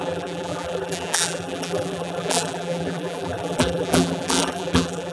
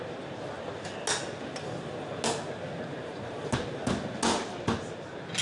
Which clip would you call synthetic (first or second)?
first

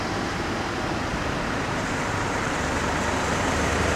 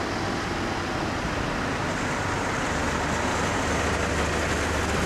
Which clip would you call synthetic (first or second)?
first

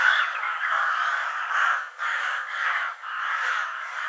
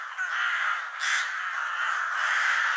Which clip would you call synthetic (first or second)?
first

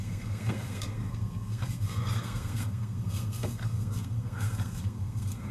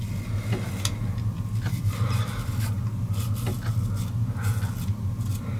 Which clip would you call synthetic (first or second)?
first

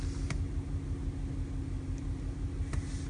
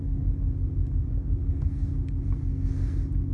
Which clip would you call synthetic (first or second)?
second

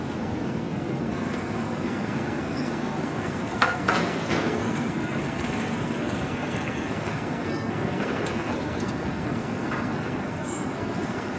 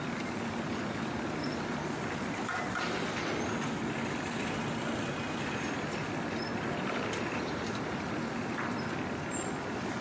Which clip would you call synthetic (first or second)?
first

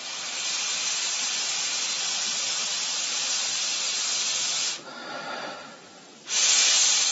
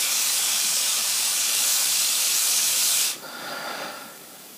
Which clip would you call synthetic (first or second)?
second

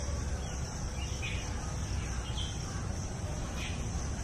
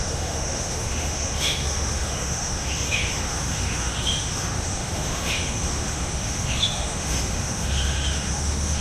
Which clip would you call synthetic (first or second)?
second